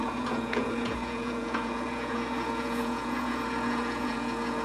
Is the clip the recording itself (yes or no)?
no